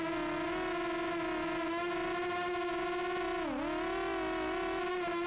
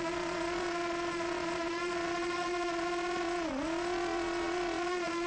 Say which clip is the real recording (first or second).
first